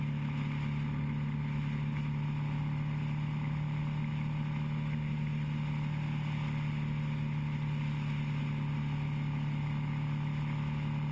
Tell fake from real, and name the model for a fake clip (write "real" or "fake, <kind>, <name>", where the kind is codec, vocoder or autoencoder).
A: real